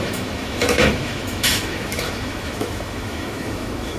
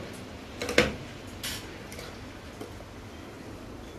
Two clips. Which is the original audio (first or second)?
second